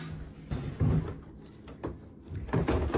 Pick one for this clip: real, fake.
real